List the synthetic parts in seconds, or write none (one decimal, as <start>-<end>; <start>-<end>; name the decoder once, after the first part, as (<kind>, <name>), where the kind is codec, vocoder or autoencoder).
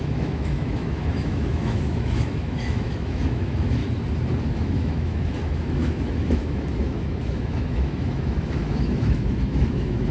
0.0-3.8 (autoencoder, DAC-VAE); 4.5-10.1